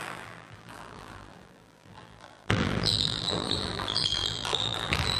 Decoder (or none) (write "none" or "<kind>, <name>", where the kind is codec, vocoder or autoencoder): vocoder, BigVGAN v2